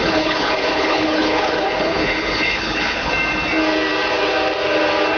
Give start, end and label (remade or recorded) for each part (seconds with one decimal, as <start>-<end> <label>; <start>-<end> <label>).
0.0-3.1 remade; 3.1-5.2 recorded